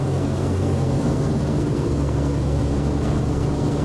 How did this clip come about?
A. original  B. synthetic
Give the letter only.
B